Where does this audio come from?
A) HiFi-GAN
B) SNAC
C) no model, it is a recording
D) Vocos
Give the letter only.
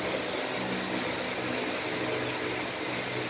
C